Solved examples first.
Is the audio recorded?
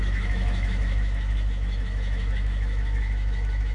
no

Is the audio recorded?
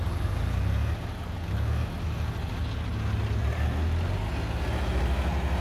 yes